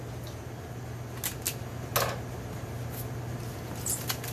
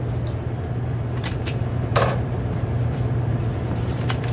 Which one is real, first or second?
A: first